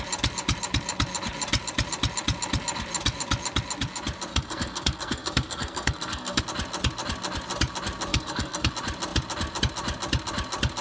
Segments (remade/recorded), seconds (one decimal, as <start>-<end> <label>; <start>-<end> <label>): 0.0-4.3 recorded; 4.3-6.4 remade; 6.4-8.1 recorded; 8.1-8.7 remade; 8.7-10.8 recorded